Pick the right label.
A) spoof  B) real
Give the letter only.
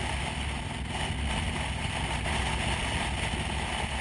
B